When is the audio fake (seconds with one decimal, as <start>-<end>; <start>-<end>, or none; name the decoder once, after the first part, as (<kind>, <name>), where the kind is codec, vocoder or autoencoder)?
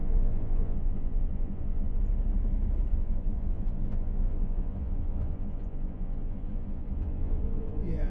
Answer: 0.0-2.0 (vocoder, Vocos); 2.9-8.1